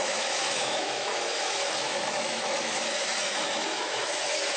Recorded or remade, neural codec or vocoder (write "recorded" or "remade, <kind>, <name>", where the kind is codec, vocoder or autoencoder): remade, autoencoder, DAC-VAE